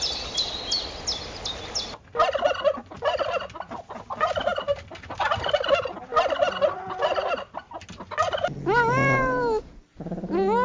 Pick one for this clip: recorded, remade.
recorded